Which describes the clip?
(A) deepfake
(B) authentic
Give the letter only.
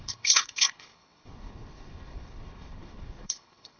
A